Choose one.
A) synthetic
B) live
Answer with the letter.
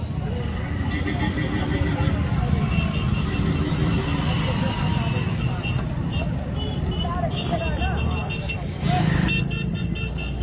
B